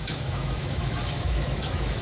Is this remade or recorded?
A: remade